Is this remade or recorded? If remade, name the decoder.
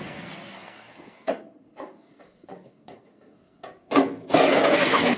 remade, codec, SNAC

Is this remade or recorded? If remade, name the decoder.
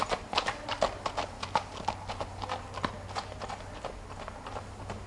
recorded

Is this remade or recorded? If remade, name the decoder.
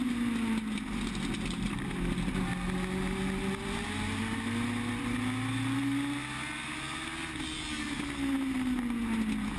recorded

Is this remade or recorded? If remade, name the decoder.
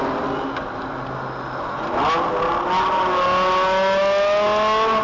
recorded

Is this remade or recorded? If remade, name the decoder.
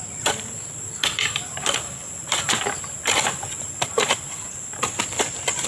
remade, vocoder, BigVGAN v2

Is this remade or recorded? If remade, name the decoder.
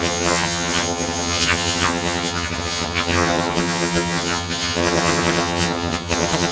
remade, vocoder, HiFi-GAN